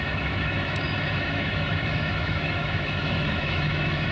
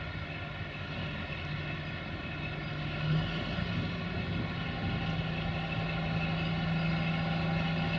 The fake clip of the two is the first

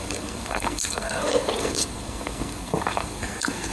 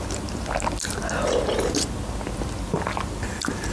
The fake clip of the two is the first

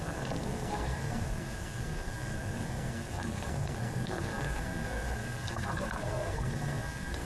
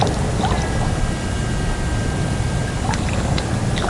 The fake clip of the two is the first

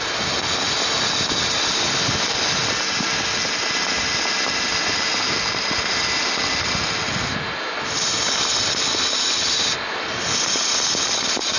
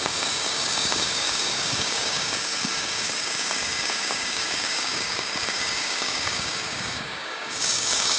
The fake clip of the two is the second